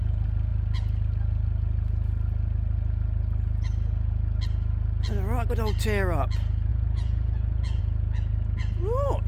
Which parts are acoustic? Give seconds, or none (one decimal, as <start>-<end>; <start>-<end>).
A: 0.0-6.7; 7.8-9.3